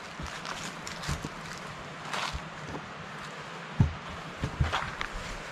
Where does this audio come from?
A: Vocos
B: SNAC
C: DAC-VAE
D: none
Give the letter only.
D